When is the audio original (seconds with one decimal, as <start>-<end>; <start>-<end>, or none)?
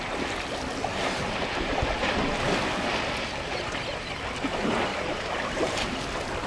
0.0-1.0; 2.2-4.9; 6.0-6.5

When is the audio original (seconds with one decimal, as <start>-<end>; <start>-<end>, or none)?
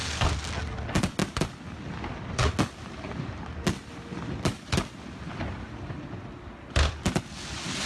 0.0-7.9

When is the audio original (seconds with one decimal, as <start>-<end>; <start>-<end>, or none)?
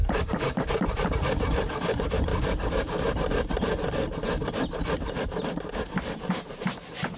2.3-6.3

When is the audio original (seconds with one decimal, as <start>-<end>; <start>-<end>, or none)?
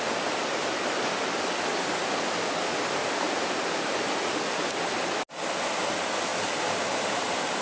0.0-3.0; 4.1-7.6